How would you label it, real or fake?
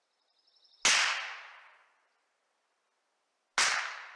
real